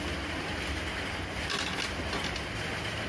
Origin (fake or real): real